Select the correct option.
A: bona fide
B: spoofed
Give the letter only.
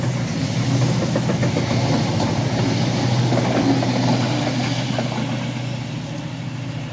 A